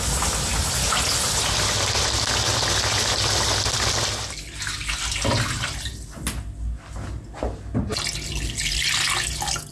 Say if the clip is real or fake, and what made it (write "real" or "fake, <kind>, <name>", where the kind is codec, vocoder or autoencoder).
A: real